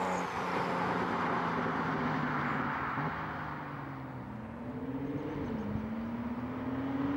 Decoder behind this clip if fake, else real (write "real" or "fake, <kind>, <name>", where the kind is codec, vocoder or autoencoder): real